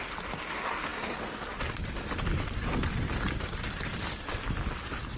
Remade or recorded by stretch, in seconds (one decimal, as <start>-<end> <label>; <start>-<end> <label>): 0.0-5.2 recorded